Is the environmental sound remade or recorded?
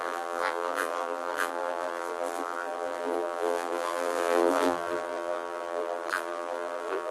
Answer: remade